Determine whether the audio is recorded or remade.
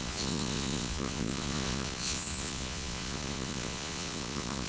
remade